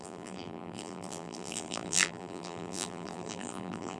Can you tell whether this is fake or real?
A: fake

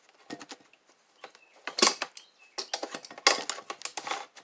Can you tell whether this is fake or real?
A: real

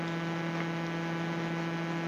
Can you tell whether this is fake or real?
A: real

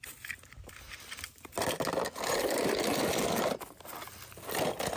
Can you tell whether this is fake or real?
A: real